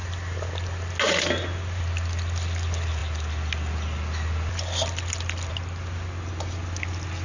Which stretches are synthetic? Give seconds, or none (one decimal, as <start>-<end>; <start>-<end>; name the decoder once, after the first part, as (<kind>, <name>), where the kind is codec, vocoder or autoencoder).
none

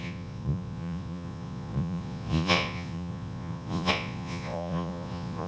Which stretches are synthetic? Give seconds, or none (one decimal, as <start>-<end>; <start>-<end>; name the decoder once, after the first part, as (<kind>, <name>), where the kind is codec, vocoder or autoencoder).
0.0-5.5 (vocoder, Vocos)

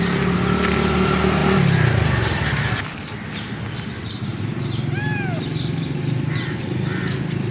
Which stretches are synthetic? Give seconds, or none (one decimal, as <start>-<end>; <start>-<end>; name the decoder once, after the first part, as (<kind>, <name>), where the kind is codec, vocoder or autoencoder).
none